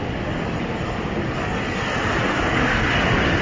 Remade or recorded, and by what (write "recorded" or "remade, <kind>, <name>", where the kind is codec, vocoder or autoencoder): recorded